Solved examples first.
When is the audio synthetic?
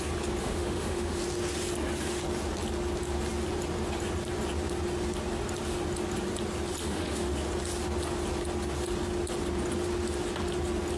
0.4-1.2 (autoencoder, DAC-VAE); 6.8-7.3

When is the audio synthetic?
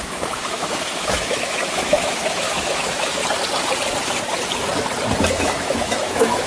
0.0-3.2 (autoencoder, DAC-VAE); 5.3-6.5